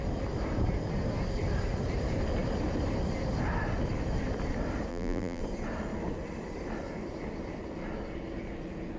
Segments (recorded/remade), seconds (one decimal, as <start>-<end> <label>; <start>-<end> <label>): 0.0-4.9 recorded; 4.9-5.4 remade; 5.4-9.0 recorded